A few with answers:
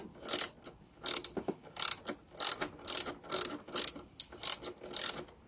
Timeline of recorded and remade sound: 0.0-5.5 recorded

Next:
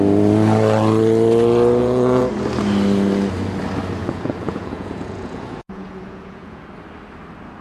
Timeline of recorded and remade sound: 0.0-1.8 recorded; 1.8-2.3 remade; 2.3-4.0 recorded; 4.0-6.6 remade; 6.6-7.6 recorded